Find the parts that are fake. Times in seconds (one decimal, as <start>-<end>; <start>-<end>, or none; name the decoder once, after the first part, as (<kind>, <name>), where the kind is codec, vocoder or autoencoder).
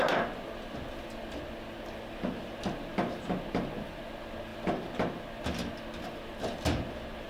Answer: none